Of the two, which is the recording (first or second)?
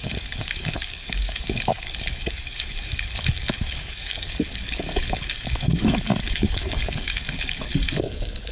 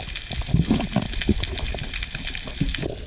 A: second